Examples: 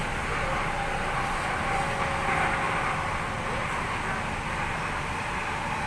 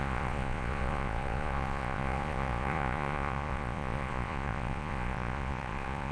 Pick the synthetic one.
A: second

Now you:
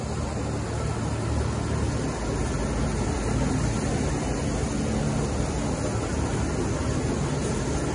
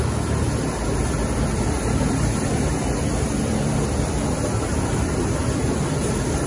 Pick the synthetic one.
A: second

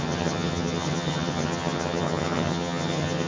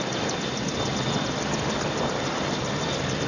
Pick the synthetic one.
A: first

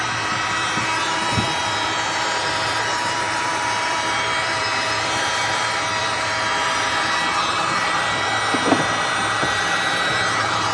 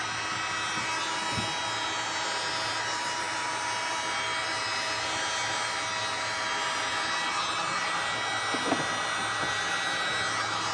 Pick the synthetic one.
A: first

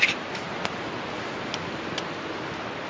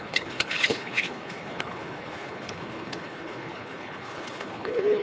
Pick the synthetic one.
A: second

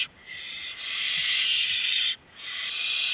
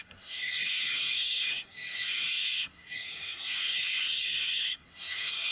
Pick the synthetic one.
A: second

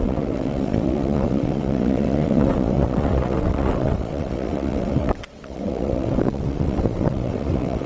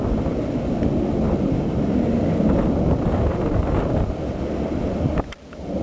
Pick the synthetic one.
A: first